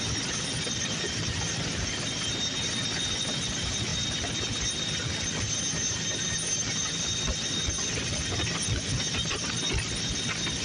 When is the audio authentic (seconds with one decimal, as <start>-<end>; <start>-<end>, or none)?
3.9-8.3